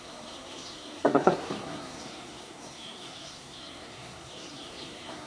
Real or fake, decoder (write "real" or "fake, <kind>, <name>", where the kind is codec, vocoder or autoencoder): fake, codec, SNAC